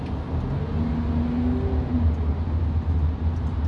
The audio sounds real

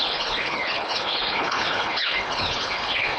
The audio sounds fake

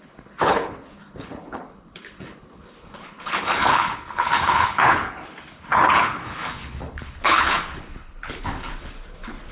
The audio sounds fake